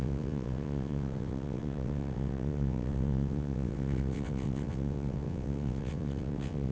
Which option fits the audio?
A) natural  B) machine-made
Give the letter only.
B